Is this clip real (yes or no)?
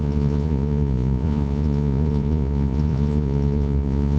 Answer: no